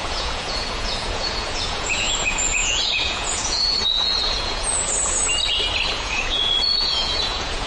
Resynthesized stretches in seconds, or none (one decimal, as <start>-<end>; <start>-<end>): 0.0-5.3; 5.9-7.7